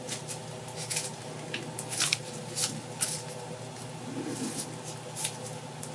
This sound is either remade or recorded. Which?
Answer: recorded